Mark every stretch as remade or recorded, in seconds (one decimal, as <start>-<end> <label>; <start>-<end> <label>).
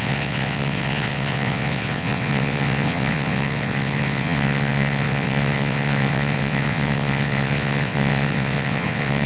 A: 0.0-9.3 remade